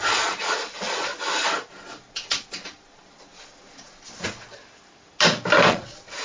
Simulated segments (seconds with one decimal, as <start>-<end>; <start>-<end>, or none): 0.0-1.1; 1.7-4.6; 5.7-6.2